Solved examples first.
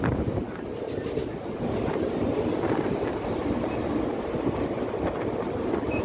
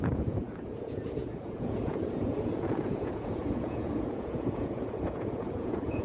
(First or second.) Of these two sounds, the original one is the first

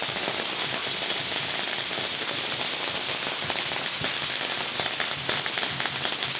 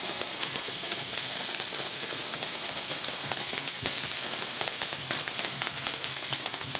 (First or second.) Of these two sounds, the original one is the first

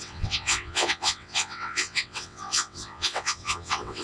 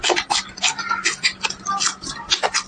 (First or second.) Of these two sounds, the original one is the second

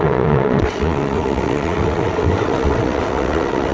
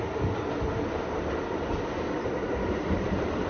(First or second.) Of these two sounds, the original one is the second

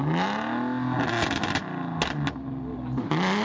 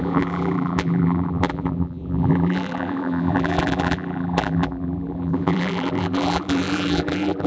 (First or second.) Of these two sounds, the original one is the first